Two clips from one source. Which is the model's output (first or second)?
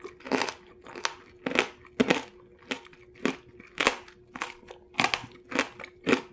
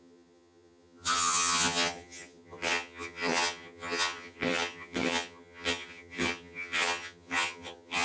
second